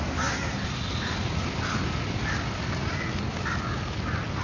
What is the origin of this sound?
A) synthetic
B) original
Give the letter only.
B